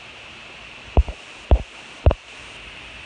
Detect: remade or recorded recorded